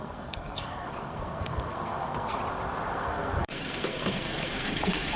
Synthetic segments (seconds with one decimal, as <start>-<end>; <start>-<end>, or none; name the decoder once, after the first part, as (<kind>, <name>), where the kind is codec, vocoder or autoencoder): 0.0-2.4 (codec, SNAC); 2.9-5.2